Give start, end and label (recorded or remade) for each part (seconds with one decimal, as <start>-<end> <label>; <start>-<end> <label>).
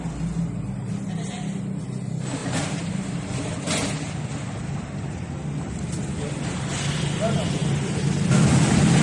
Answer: 0.0-2.4 recorded; 2.4-3.5 remade; 3.5-4.3 recorded; 4.3-5.9 remade; 5.9-9.0 recorded